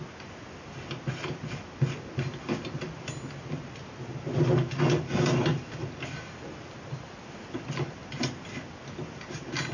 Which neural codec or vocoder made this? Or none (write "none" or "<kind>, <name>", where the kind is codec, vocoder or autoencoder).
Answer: none